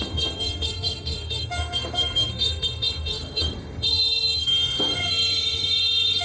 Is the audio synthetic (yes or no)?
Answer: yes